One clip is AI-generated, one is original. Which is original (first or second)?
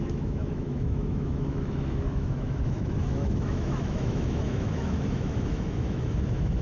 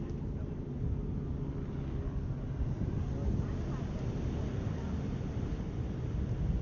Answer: second